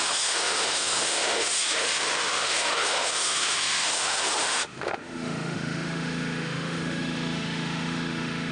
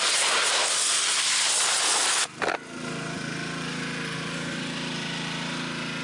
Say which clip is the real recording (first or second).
second